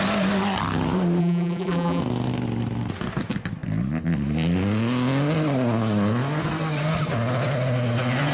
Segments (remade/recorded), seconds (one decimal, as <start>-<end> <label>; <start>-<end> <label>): 0.0-1.2 recorded; 1.2-2.0 remade; 2.0-8.3 recorded